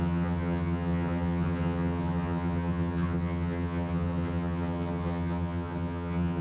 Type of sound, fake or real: fake